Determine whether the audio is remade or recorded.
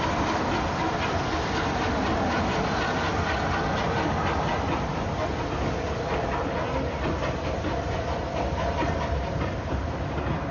recorded